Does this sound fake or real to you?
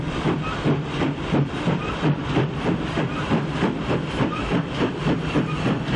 fake